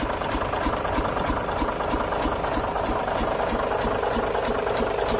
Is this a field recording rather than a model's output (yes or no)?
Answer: yes